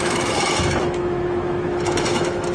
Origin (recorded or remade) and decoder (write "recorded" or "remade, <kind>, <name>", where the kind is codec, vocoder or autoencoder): remade, autoencoder, DAC-VAE